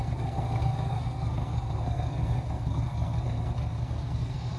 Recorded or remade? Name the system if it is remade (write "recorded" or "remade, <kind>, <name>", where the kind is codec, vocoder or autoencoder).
remade, codec, SNAC